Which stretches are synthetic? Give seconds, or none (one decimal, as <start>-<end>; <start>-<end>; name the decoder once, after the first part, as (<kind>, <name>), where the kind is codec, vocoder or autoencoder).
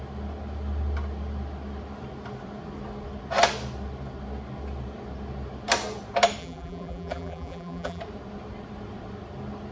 6.4-8.0 (vocoder, BigVGAN v2)